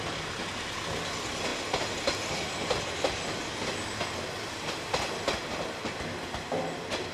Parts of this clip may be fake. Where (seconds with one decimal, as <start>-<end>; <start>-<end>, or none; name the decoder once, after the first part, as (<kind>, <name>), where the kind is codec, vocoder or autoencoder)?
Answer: none